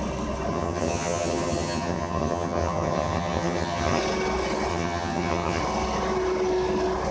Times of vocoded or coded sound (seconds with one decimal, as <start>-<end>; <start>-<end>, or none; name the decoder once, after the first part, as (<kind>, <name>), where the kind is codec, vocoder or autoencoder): 0.5-4.0 (vocoder, HiFi-GAN); 4.7-5.6